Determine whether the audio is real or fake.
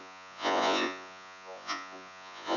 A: fake